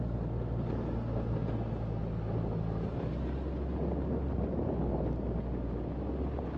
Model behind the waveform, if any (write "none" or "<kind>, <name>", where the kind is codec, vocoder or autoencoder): none